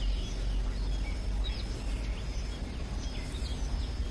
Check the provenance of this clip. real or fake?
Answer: real